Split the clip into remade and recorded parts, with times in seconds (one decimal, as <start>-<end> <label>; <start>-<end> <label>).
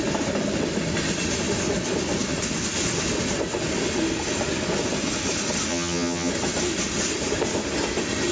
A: 0.0-5.7 recorded; 5.7-6.3 remade; 6.3-8.3 recorded